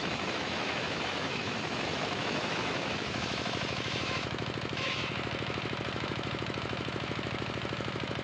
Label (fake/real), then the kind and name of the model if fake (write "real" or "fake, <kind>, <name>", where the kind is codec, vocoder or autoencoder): fake, autoencoder, DAC-VAE